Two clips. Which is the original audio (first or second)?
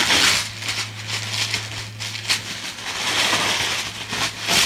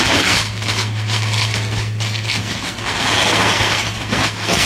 first